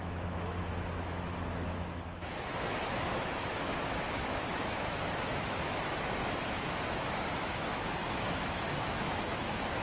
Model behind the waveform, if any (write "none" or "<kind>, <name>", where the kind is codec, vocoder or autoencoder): autoencoder, DAC-VAE